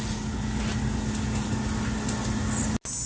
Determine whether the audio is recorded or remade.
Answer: recorded